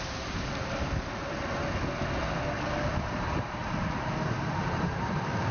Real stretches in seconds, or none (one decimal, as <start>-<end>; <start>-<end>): 1.6-2.9; 3.6-4.4